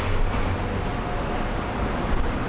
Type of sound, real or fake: real